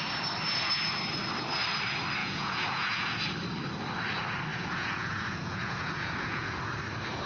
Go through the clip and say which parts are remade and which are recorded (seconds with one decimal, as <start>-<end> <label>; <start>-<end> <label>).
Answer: 0.0-2.2 recorded; 2.2-3.2 remade; 3.2-4.5 recorded; 4.5-6.6 remade; 6.6-7.3 recorded